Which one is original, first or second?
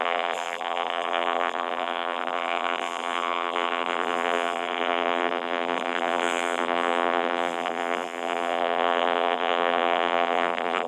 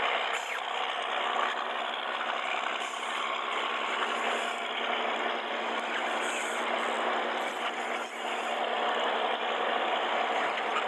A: second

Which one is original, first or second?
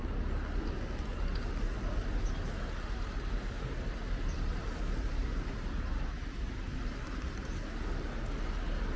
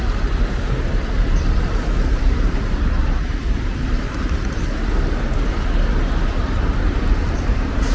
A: first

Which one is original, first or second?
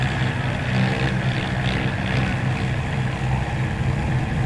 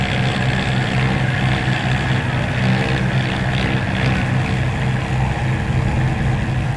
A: second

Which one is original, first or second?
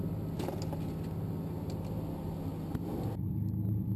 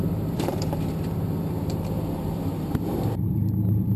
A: first